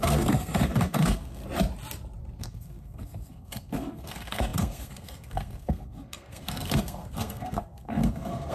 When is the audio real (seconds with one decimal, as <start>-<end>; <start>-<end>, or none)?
1.4-2.4